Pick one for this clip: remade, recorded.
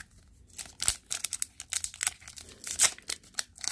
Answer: recorded